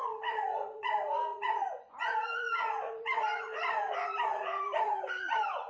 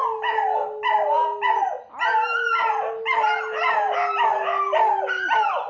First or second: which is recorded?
second